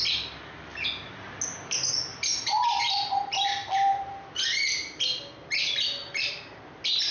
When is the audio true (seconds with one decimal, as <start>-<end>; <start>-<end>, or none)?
0.0-2.1; 2.8-3.6; 5.0-6.0; 6.6-7.1